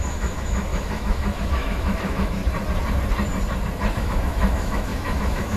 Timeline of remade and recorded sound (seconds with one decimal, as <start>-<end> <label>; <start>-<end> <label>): 0.0-2.4 remade; 2.4-4.0 recorded; 4.0-5.6 remade